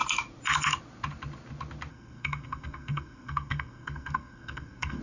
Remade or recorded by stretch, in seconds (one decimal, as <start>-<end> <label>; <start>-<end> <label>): 0.0-1.9 recorded; 1.9-5.0 remade